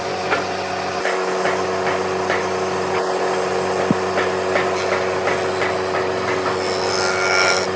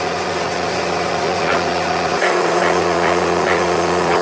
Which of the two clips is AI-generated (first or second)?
second